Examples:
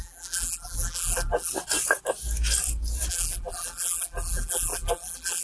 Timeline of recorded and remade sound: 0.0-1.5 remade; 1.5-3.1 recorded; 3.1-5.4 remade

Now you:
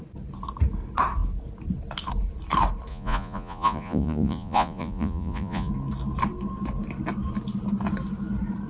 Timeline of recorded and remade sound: 0.0-2.9 recorded; 2.9-5.7 remade; 5.7-8.7 recorded

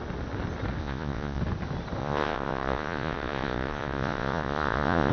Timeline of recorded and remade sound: 0.0-0.8 recorded; 0.8-1.4 remade; 1.4-2.0 recorded; 2.0-5.1 remade